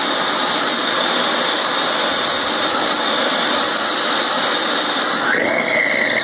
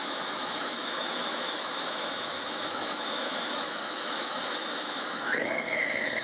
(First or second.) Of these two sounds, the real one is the first